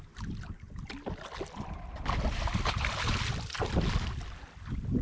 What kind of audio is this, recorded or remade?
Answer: recorded